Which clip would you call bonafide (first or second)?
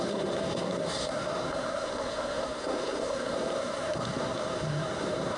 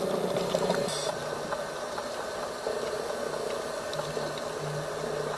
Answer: second